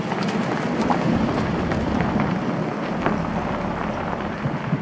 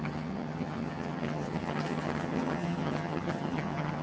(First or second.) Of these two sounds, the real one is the first